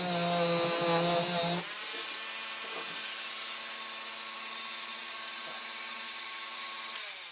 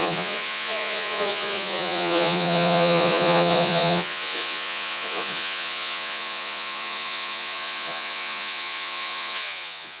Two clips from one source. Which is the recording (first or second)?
first